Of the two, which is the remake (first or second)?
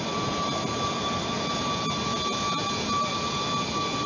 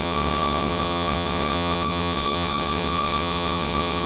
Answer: second